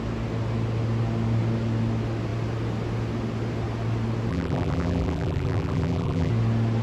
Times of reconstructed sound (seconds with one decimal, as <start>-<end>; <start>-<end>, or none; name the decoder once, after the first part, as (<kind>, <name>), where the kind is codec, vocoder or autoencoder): 4.3-6.3 (vocoder, BigVGAN v2)